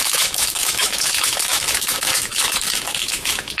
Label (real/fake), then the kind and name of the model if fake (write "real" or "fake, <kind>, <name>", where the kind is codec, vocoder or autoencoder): fake, autoencoder, DAC-VAE